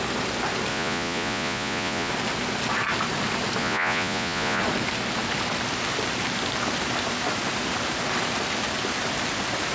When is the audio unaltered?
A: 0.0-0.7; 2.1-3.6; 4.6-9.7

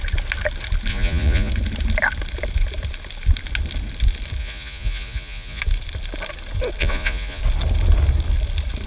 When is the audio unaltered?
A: 0.0-0.9; 1.5-4.4; 5.6-6.8; 7.4-8.9

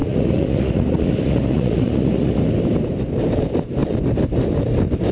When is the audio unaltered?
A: 2.4-5.1